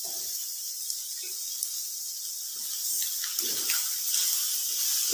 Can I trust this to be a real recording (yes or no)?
yes